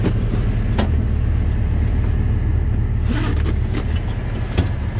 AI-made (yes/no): no